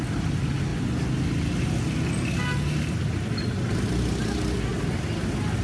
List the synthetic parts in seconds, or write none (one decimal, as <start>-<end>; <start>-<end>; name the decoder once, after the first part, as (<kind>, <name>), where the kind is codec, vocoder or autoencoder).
none

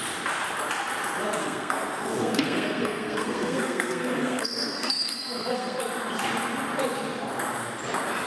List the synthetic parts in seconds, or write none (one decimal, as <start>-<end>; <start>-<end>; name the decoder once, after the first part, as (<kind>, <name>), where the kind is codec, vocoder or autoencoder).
1.4-5.8 (codec, SNAC)

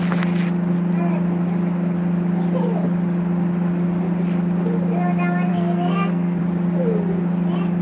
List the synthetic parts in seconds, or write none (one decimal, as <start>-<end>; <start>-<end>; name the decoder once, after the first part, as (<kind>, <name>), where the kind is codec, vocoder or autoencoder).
5.5-6.4 (codec, SNAC)

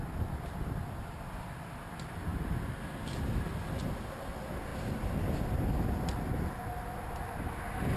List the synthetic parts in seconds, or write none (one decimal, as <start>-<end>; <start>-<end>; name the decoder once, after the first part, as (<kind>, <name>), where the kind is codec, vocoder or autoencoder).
none

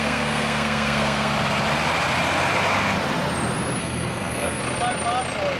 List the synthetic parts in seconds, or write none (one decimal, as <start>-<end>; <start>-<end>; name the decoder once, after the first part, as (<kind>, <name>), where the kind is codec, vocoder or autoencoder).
0.0-1.3 (codec, SNAC); 3.8-4.6